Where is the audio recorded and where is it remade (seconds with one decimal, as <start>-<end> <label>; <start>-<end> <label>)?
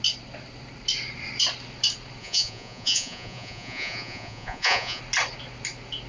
0.0-2.2 recorded; 2.2-5.0 remade; 5.0-6.1 recorded